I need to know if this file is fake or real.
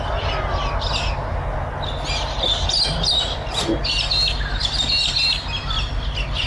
real